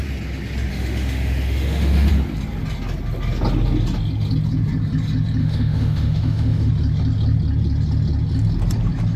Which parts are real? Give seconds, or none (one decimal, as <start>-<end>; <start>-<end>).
0.0-0.7; 2.1-5.4; 6.7-9.2